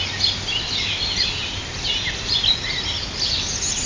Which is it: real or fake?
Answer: real